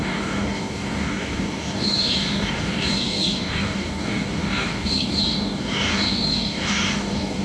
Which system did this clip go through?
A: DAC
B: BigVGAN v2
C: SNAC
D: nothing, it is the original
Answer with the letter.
A